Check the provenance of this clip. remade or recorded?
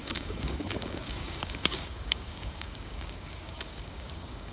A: remade